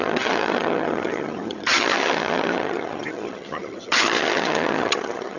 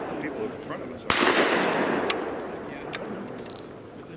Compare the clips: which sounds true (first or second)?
second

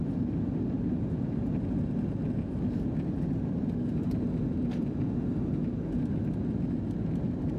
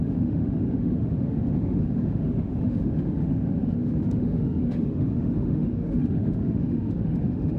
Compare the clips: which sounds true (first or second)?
first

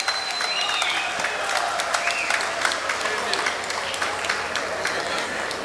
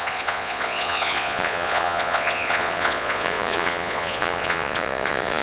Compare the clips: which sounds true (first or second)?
first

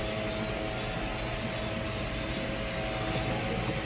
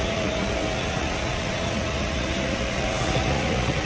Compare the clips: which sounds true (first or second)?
first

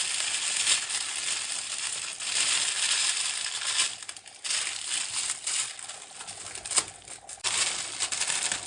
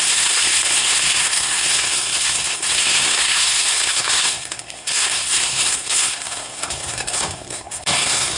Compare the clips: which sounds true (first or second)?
first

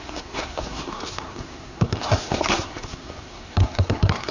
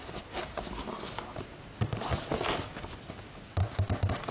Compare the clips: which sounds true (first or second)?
second